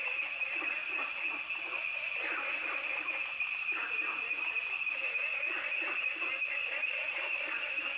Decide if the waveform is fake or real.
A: real